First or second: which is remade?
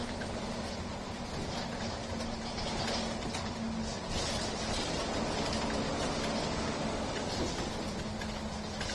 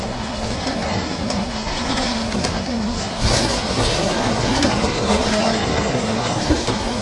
second